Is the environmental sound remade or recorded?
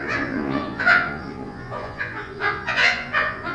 remade